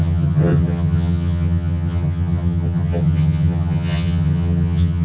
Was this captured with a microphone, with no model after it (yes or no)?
no